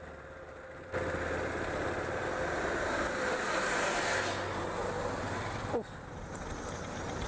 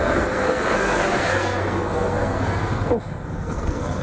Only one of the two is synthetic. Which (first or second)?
second